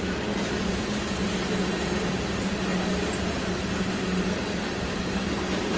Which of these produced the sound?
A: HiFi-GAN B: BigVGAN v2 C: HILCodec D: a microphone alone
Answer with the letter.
D